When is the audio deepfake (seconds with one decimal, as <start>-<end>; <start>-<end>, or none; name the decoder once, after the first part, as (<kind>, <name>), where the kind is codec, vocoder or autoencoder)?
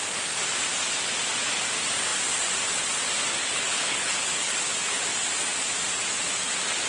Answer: 3.4-4.5 (codec, HILCodec)